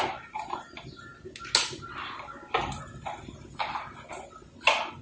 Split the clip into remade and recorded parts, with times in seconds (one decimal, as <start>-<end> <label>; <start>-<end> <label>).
0.0-5.0 recorded